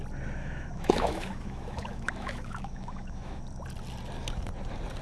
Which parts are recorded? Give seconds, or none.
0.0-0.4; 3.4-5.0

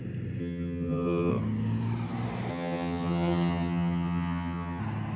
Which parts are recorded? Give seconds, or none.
0.0-0.4; 1.3-2.5; 4.8-5.2

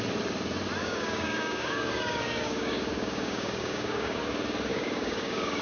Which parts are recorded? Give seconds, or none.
0.0-0.8; 4.2-4.7

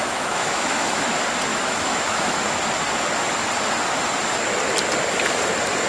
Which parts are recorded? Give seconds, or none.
1.1-1.5; 2.4-5.9

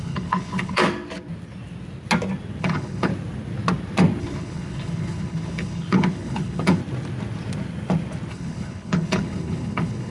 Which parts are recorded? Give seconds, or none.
0.8-2.6; 3.1-4.2; 6.8-8.3

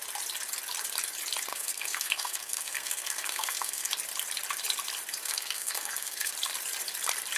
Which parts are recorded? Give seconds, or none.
0.0-1.5; 3.9-5.2; 6.3-7.4